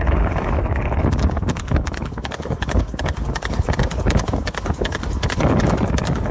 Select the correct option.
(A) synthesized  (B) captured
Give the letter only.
A